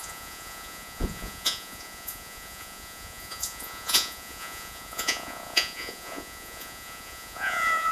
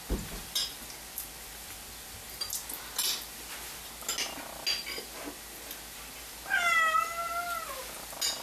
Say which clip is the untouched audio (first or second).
second